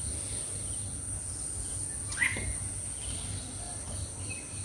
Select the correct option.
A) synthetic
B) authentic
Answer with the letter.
B